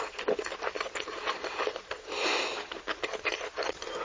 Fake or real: real